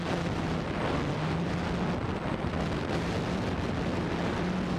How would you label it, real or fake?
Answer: real